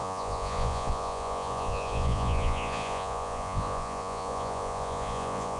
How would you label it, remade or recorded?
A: remade